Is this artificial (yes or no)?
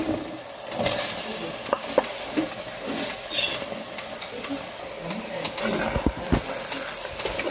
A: no